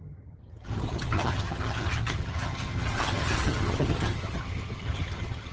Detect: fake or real fake